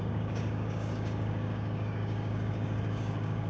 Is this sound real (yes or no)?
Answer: no